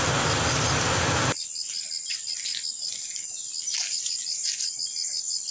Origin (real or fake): real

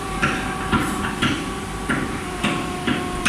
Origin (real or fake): fake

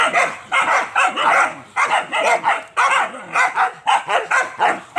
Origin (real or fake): real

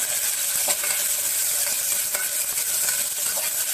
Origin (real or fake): real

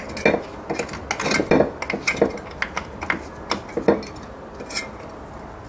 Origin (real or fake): real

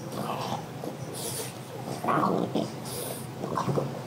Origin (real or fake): real